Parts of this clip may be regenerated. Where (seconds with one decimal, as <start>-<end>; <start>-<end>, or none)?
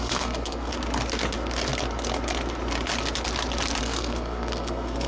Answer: 0.0-0.7; 3.8-5.1